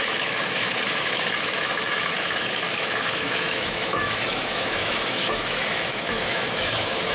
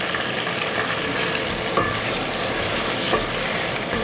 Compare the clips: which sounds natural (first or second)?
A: second